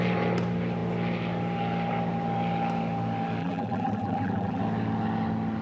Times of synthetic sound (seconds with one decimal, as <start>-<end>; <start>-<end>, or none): 3.4-4.6